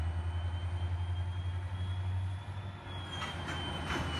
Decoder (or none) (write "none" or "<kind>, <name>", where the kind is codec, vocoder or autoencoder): none